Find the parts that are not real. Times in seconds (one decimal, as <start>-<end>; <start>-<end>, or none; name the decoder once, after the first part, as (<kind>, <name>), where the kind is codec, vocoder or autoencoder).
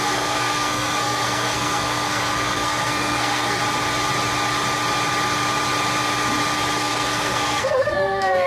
0.0-3.6 (codec, SNAC); 6.8-8.5